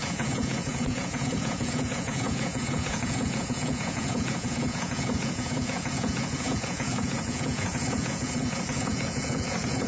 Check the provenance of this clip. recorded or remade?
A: remade